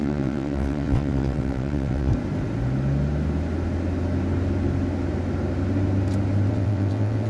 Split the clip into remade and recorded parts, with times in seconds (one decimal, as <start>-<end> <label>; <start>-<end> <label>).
0.0-2.1 remade; 2.1-6.5 recorded; 6.5-7.3 remade